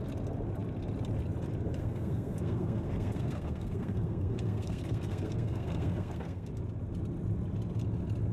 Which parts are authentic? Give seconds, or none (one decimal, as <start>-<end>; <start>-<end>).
0.0-1.8; 6.5-8.3